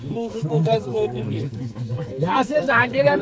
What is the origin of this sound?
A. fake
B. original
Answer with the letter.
A